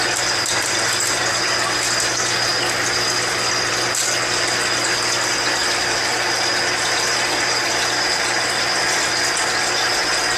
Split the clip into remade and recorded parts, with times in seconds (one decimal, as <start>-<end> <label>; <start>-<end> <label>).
0.0-10.4 recorded